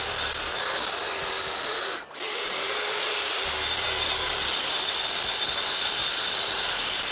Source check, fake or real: real